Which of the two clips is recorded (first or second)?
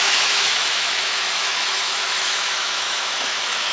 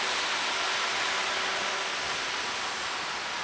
second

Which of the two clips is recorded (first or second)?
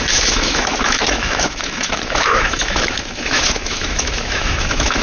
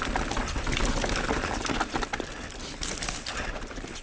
second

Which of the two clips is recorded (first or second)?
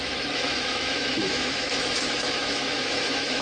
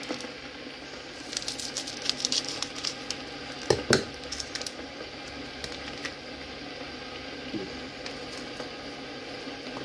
second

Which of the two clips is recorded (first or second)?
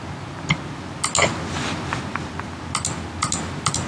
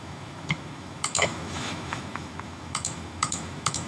first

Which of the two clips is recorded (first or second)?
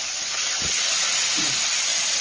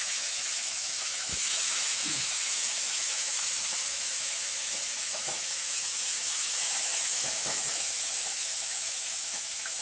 first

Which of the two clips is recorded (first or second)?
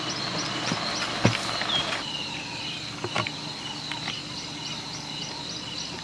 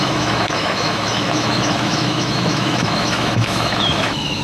first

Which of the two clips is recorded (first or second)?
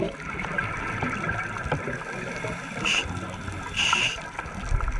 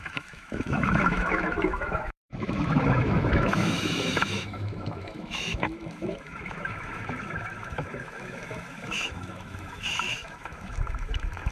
first